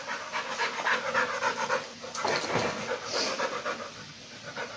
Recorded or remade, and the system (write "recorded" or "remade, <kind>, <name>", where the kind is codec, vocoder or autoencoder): recorded